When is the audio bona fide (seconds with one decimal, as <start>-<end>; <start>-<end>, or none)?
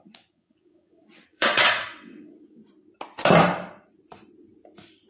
2.6-5.1